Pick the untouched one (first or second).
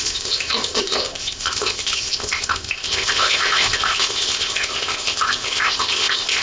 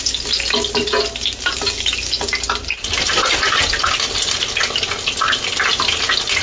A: second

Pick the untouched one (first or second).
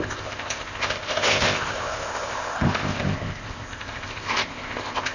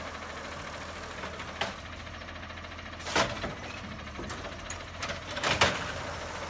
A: second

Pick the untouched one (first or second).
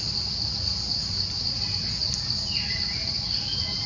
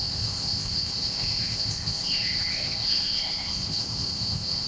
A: first